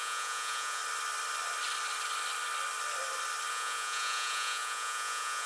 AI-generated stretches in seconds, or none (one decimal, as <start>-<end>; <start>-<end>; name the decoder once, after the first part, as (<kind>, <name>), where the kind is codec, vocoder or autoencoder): 0.0-0.8 (vocoder, Vocos); 3.5-5.5